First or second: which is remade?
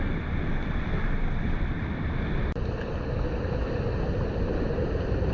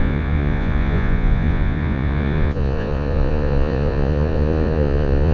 second